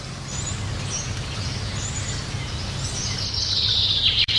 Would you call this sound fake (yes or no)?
no